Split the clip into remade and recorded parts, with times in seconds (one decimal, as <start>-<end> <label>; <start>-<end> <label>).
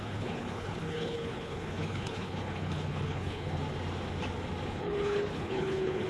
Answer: 0.0-3.6 remade; 3.6-4.7 recorded; 4.7-6.1 remade